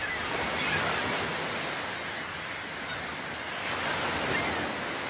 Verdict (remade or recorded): recorded